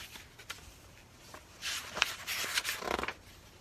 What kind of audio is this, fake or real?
real